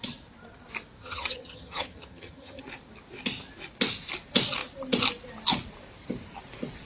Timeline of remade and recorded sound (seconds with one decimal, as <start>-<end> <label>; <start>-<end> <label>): 0.0-1.0 recorded; 1.0-2.6 remade; 2.6-6.9 recorded